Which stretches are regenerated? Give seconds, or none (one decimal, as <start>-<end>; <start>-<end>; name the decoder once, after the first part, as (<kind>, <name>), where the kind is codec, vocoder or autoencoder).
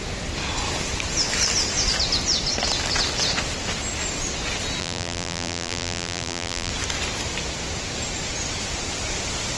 4.8-6.7 (vocoder, BigVGAN v2)